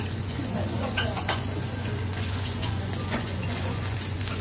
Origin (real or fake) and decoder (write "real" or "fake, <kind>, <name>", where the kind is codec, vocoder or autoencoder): fake, vocoder, Vocos